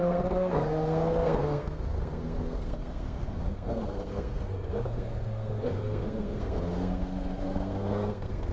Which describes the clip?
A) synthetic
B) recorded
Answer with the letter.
A